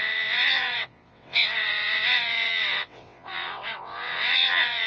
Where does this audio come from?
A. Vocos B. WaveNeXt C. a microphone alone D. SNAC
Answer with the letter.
B